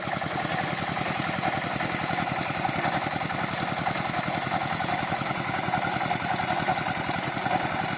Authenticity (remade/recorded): recorded